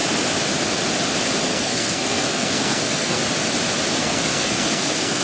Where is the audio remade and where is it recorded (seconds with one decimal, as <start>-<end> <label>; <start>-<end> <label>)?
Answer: 0.0-1.5 recorded; 1.5-3.2 remade; 3.2-4.0 recorded; 4.0-5.2 remade